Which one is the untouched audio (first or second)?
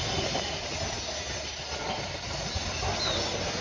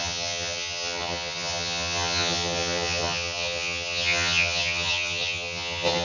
first